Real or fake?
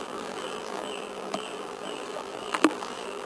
fake